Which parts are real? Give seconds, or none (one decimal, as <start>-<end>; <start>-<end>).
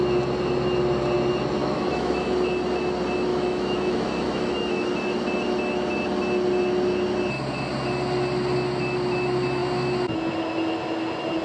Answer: 0.0-1.6; 2.3-3.3; 4.9-11.4